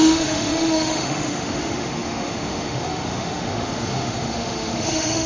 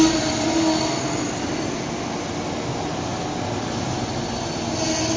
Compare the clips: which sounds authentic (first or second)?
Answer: second